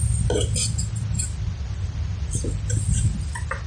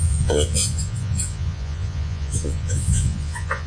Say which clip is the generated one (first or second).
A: second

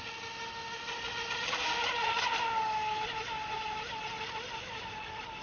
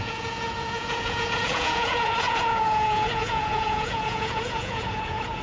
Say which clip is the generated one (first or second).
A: second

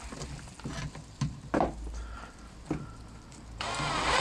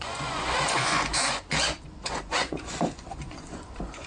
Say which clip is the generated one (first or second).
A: second